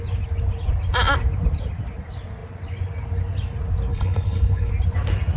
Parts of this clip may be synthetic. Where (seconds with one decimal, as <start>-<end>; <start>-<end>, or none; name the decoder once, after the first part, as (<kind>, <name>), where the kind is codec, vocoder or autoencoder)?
3.9-4.7 (codec, HILCodec)

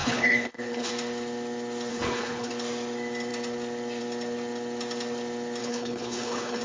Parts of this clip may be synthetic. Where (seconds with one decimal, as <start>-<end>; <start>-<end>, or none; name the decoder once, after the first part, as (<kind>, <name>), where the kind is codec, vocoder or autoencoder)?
0.0-0.9 (codec, HILCodec); 1.9-2.5; 5.6-6.6

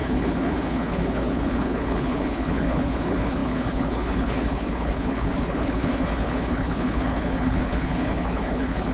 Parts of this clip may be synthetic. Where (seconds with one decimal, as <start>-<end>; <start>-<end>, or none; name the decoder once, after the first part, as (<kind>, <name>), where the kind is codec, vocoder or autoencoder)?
0.0-8.9 (codec, HILCodec)